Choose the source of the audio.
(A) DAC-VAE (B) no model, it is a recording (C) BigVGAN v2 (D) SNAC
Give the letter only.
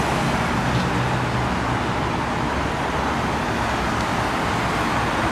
B